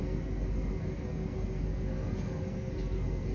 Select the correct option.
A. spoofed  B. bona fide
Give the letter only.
A